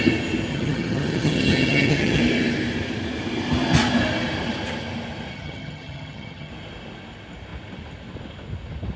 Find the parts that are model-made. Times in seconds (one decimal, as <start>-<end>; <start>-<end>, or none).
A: 0.5-2.2; 5.3-6.5